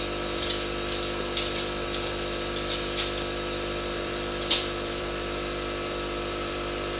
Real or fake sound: fake